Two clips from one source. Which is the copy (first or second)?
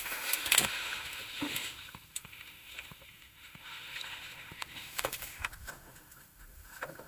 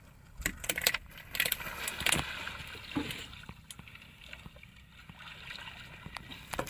first